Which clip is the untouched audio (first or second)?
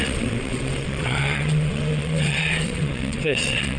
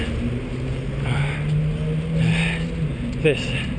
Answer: second